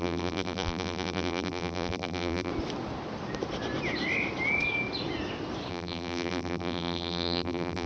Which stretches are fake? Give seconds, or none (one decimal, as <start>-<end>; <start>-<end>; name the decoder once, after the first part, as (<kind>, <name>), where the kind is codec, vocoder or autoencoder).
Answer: 0.0-2.5 (vocoder, BigVGAN v2); 5.7-7.9